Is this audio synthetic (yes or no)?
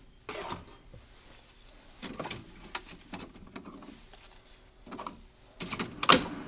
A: no